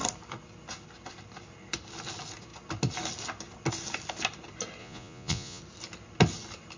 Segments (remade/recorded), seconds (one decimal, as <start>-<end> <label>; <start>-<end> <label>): 0.0-4.8 recorded; 4.8-5.6 remade; 5.6-6.8 recorded